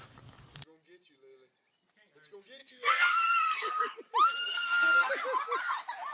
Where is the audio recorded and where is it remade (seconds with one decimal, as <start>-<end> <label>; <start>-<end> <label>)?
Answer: 0.0-2.6 recorded; 2.6-4.0 remade; 4.0-4.4 recorded; 4.4-5.1 remade; 5.1-6.1 recorded